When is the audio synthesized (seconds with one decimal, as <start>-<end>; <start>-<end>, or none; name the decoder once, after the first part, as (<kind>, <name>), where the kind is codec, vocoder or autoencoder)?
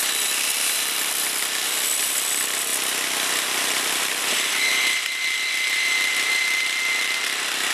0.0-2.7 (vocoder, BigVGAN v2); 3.4-4.7; 5.5-7.7